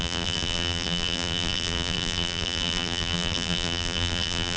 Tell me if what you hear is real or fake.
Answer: fake